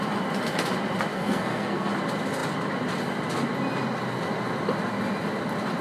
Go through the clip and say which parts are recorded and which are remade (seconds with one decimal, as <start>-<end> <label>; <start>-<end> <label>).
0.0-1.1 recorded; 1.1-1.9 remade; 1.9-5.8 recorded

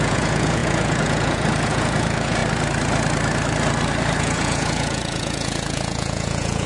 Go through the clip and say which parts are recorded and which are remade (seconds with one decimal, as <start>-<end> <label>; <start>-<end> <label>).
0.0-2.4 remade; 2.4-4.2 recorded; 4.2-6.7 remade

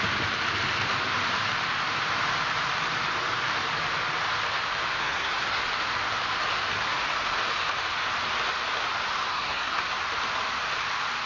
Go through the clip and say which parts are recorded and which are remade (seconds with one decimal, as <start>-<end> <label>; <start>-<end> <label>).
0.0-5.0 recorded; 5.0-5.6 remade; 5.6-9.3 recorded; 9.3-9.8 remade; 9.8-11.3 recorded

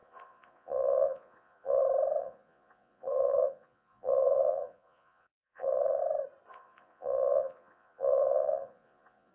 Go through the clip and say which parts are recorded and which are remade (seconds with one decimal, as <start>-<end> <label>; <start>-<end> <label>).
0.0-1.8 remade; 1.8-2.2 recorded; 2.2-6.0 remade; 6.0-6.5 recorded; 6.5-9.3 remade

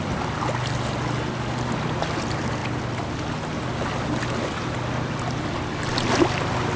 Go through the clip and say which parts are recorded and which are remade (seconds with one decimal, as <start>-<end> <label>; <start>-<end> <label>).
0.0-6.8 recorded

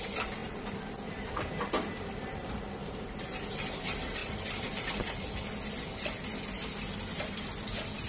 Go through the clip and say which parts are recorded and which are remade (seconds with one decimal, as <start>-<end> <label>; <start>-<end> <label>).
0.0-0.4 recorded; 0.4-3.2 remade; 3.2-4.2 recorded; 4.2-5.3 remade; 5.3-8.1 recorded

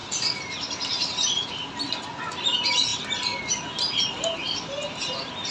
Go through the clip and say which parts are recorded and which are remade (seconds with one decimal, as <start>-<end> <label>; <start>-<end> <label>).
0.0-2.9 remade; 2.9-5.5 recorded

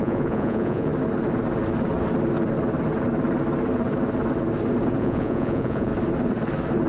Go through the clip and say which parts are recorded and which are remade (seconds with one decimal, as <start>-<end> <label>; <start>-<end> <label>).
0.0-0.9 remade; 0.9-5.0 recorded; 5.0-5.9 remade; 5.9-6.9 recorded